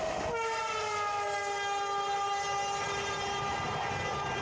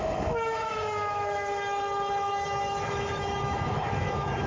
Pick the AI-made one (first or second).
second